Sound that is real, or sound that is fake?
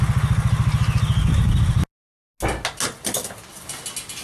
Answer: real